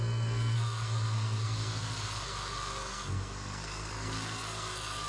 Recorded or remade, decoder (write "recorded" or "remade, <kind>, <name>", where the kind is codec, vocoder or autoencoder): remade, codec, SNAC